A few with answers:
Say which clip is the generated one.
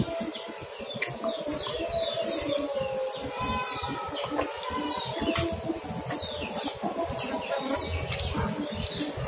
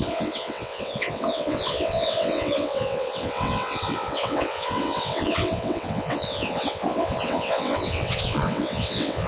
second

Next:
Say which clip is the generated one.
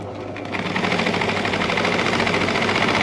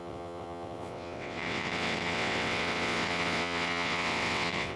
second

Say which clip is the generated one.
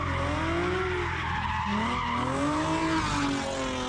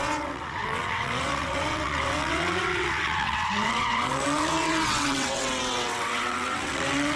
second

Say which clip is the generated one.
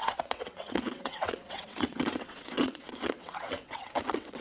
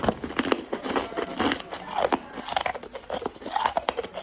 first